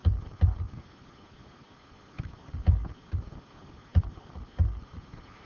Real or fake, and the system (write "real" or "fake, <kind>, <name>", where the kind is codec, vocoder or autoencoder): real